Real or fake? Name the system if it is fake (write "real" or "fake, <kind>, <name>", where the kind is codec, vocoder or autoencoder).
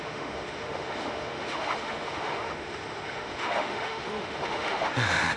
fake, autoencoder, DAC-VAE